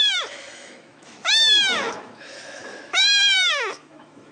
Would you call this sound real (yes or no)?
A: no